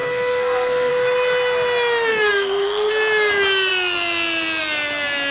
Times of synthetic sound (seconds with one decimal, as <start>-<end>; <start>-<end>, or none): 0.0-0.9; 2.1-2.9

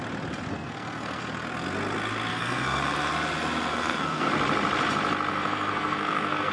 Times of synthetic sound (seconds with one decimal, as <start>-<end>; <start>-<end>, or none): 0.5-1.2; 2.3-2.8; 3.7-4.3; 5.3-6.5

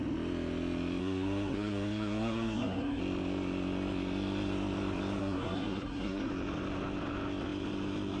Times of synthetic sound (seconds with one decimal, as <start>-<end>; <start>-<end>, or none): 1.0-3.0; 5.2-6.3

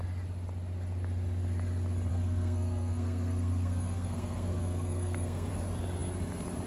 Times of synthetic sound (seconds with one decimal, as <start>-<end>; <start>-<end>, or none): 2.1-5.5